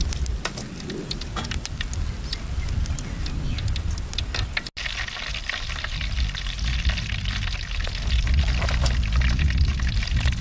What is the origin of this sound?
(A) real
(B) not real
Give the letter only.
A